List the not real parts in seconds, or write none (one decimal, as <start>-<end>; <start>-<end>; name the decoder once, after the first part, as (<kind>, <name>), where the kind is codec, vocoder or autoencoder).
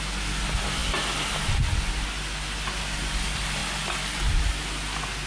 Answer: none